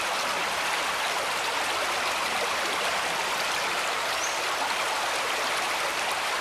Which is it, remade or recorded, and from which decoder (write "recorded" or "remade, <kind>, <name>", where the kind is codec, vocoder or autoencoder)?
remade, vocoder, BigVGAN v2